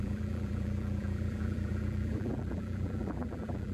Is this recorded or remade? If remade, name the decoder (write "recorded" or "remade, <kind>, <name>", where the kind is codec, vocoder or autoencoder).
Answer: remade, vocoder, BigVGAN v2